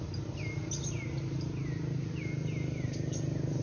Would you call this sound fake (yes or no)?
no